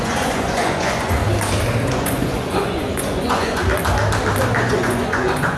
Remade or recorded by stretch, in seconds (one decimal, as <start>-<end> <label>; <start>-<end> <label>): 0.0-1.2 remade; 1.2-1.9 recorded; 1.9-3.6 remade; 3.6-4.6 recorded; 4.6-5.6 remade